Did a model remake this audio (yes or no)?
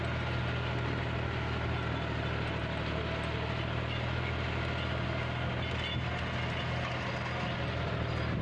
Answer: no